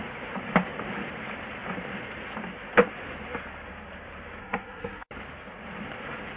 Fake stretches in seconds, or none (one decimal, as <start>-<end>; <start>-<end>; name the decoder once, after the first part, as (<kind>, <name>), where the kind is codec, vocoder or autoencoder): 4.4-5.1 (codec, SNAC)